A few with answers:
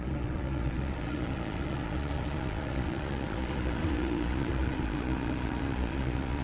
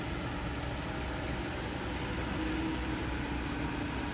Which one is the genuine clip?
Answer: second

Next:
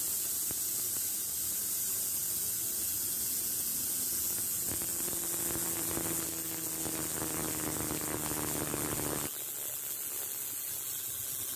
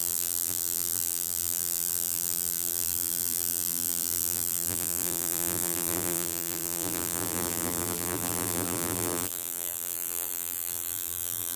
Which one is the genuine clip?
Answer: first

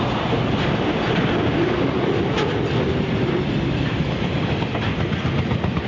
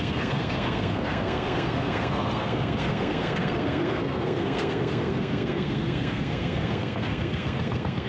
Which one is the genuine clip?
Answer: first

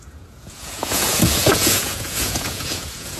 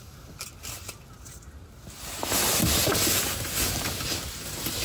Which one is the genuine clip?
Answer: second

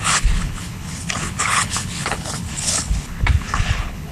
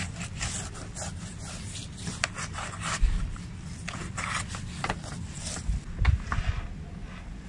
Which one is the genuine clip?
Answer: second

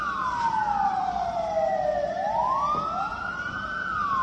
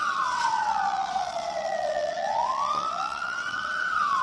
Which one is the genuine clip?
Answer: first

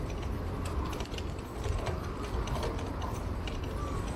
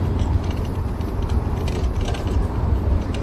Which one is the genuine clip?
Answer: first